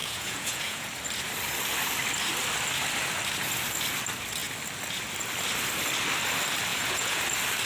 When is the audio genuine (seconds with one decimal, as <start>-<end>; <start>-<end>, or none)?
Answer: 0.9-6.7; 7.2-7.7